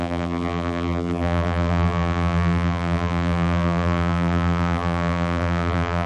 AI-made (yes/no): yes